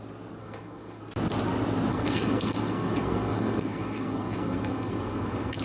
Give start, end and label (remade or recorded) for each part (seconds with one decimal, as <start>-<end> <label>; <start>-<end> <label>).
0.0-0.4 recorded; 0.4-1.0 remade; 1.0-1.9 recorded; 1.9-5.6 remade